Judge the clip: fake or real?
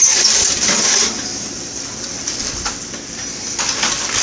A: real